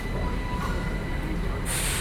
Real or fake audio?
real